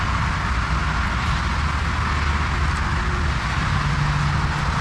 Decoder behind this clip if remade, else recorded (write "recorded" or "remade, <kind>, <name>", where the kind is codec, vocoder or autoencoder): recorded